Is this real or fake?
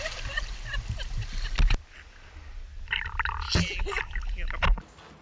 real